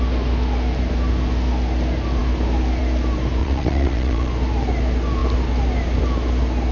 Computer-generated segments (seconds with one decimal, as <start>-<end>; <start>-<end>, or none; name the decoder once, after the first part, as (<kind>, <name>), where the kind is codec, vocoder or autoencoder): 3.4-4.3 (vocoder, Vocos)